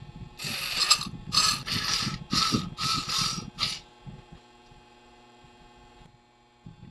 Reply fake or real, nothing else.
fake